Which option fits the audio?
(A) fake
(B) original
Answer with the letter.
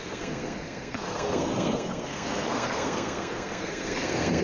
A